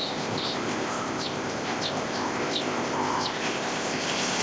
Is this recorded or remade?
remade